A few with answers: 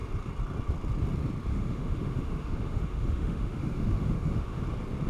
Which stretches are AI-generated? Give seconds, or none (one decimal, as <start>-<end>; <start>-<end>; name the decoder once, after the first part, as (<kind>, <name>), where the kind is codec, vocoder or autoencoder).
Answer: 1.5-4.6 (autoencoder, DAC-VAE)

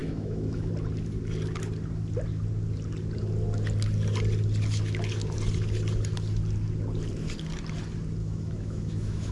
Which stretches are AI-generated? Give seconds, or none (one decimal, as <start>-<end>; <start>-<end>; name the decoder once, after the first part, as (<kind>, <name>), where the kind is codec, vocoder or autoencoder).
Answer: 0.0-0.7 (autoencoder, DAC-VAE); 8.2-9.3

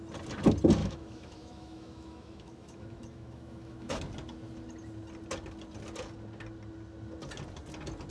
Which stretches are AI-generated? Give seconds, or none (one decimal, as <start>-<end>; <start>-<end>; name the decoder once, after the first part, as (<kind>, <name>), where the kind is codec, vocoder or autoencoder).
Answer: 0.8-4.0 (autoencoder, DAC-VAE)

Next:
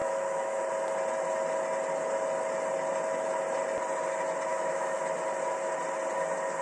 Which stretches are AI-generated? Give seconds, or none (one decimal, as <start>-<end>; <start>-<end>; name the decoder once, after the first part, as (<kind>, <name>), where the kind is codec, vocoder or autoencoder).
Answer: 0.0-0.7 (autoencoder, DAC-VAE); 4.5-5.0

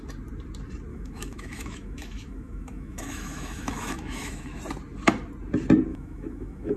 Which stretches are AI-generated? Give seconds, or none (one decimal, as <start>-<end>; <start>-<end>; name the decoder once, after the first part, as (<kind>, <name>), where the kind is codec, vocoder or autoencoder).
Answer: 0.9-4.6 (autoencoder, DAC-VAE); 5.9-6.8

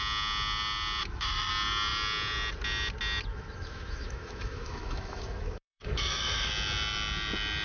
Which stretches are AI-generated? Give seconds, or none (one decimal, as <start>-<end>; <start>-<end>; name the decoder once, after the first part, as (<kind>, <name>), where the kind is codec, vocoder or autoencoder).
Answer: 1.0-1.5 (autoencoder, DAC-VAE); 3.3-6.5

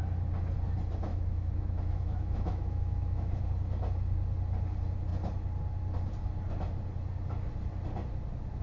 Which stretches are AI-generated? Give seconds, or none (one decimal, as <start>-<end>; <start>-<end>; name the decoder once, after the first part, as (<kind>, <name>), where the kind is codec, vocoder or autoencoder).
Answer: 1.1-3.4 (autoencoder, DAC-VAE)